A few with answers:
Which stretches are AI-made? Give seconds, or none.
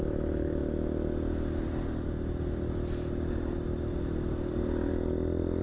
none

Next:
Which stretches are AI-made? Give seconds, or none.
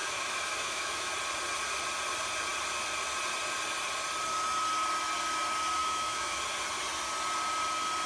0.0-1.1; 5.8-6.4